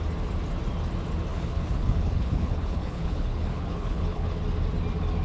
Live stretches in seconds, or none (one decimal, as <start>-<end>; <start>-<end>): 0.0-1.3; 4.4-5.2